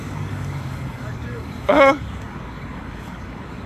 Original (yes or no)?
no